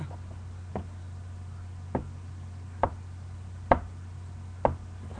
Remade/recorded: recorded